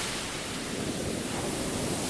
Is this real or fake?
real